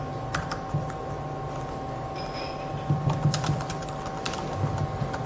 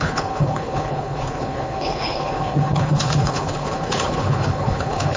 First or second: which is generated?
second